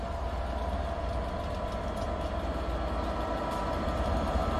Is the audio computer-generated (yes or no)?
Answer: no